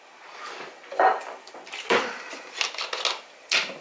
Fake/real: real